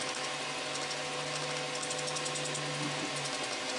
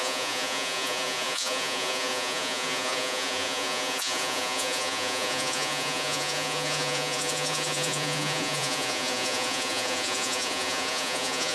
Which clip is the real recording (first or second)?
first